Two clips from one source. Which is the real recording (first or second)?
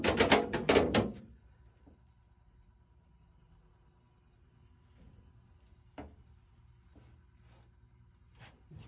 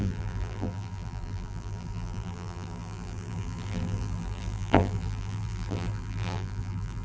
first